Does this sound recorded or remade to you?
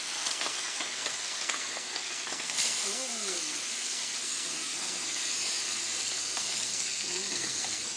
remade